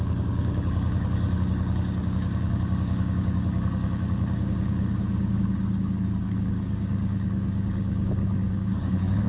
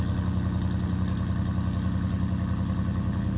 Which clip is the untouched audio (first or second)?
second